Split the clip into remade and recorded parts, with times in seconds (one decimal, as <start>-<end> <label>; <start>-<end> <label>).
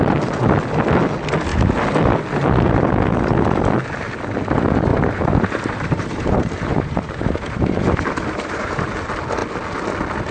0.0-4.9 recorded; 4.9-8.9 remade; 8.9-10.3 recorded